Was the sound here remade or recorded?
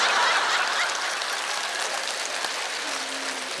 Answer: recorded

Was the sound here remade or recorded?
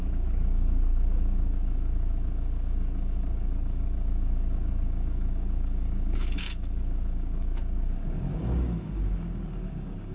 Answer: remade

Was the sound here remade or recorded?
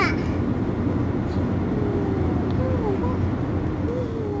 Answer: recorded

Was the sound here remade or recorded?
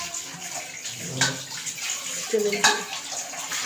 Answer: recorded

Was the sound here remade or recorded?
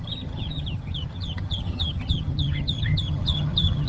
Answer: remade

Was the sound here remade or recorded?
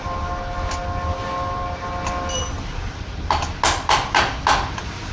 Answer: recorded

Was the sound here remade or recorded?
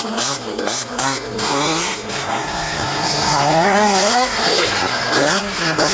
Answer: remade